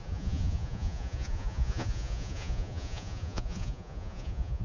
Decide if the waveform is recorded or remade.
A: remade